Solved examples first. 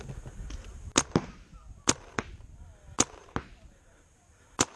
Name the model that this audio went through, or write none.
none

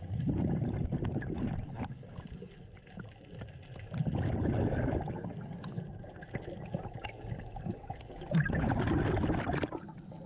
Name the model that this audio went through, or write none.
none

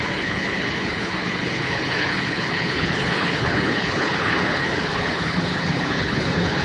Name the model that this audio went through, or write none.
codec, HILCodec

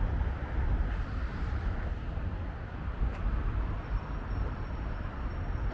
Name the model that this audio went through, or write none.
vocoder, BigVGAN v2